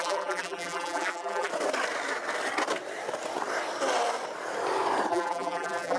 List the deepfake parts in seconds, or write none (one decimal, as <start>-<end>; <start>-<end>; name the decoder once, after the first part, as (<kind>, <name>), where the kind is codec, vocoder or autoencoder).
0.0-1.5 (vocoder, BigVGAN v2); 5.1-6.0